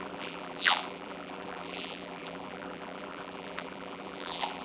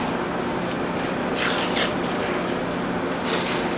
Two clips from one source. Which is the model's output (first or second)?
first